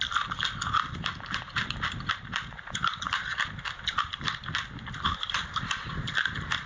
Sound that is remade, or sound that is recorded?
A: recorded